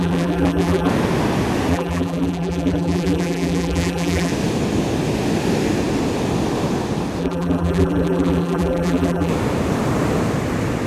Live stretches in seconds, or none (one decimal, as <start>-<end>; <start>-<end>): 0.9-1.7; 4.3-7.2; 9.3-10.9